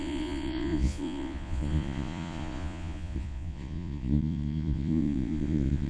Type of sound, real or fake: fake